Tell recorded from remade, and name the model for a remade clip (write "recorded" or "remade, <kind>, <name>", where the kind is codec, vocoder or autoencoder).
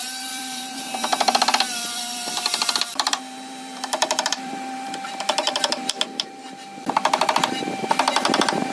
remade, vocoder, BigVGAN v2